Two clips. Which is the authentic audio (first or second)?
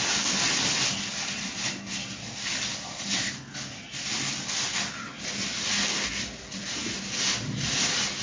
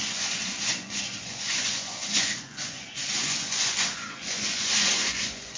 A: first